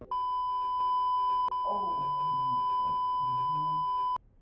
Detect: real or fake real